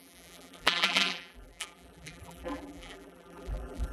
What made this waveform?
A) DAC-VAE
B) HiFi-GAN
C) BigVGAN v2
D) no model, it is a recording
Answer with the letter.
C